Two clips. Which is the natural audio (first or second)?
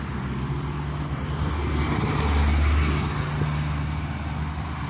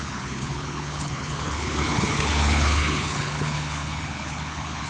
first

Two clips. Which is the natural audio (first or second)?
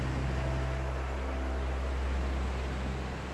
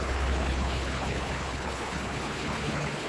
first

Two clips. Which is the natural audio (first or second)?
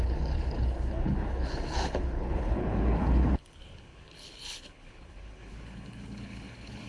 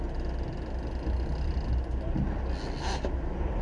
second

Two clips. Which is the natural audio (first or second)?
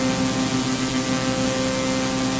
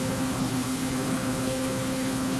first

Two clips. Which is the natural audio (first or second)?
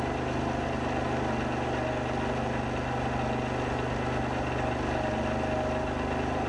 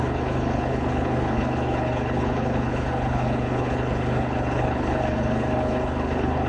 first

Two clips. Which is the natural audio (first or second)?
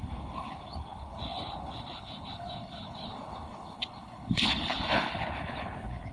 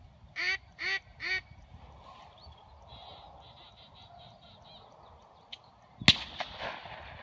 second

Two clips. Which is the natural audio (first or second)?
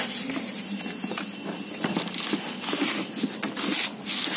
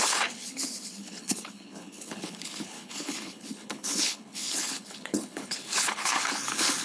first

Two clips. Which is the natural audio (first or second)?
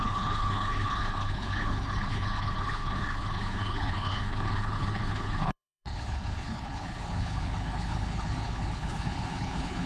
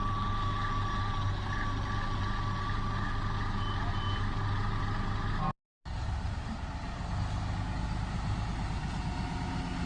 second